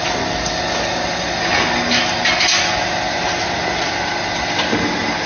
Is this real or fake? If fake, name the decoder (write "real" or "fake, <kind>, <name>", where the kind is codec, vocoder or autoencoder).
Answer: real